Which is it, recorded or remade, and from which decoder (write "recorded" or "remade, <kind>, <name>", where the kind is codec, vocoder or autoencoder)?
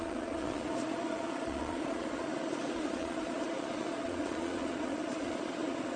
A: remade, vocoder, Vocos